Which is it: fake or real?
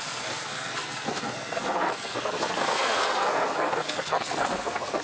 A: fake